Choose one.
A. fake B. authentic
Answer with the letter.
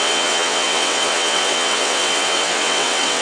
A